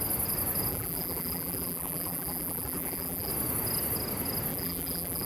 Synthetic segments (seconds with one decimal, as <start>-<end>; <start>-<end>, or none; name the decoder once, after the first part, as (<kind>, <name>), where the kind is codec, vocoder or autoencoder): 0.7-3.3 (vocoder, BigVGAN v2); 4.5-5.3